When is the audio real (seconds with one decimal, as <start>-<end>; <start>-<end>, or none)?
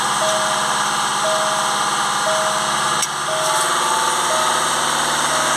0.0-5.6